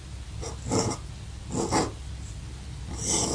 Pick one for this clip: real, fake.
real